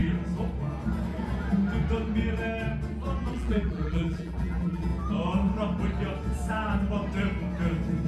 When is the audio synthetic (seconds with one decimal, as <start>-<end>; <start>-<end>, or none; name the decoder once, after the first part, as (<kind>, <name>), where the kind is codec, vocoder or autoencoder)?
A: 3.3-4.9 (vocoder, BigVGAN v2)